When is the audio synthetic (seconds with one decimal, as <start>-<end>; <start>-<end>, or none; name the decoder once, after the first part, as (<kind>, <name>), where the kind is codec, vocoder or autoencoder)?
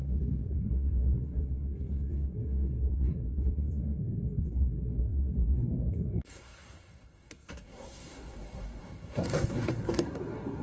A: 0.0-10.6 (codec, SNAC)